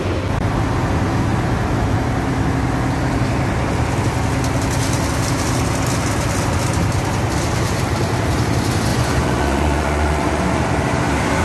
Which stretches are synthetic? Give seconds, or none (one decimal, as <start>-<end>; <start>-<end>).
8.9-10.7